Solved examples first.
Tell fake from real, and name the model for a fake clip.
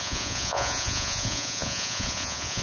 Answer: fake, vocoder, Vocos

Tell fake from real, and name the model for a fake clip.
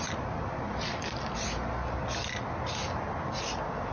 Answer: real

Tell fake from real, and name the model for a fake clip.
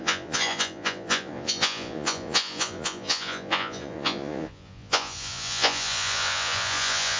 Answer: fake, vocoder, Vocos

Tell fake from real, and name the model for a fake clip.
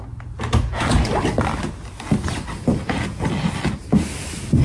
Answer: real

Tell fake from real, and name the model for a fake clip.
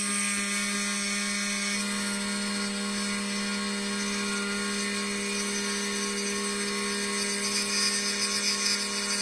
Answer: real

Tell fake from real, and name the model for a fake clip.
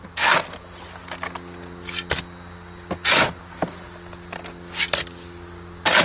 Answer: real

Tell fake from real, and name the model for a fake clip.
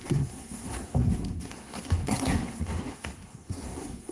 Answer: fake, codec, SNAC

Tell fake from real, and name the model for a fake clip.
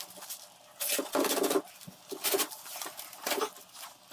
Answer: real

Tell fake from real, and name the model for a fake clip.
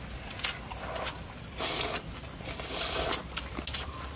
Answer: real